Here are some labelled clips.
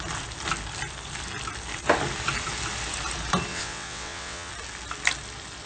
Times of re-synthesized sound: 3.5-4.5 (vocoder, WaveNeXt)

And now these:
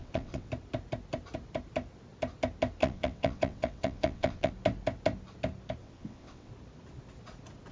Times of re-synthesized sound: 0.0-0.5 (vocoder, WaveNeXt); 2.8-4.5; 5.8-6.5

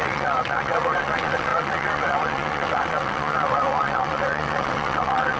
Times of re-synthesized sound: 0.0-5.4 (vocoder, WaveNeXt)

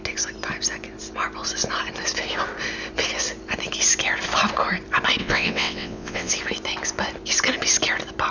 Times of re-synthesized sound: 5.2-6.3 (vocoder, WaveNeXt)